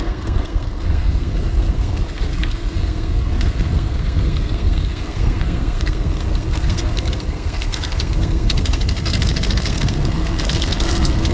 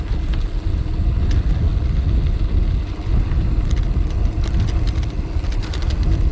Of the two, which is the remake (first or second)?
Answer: first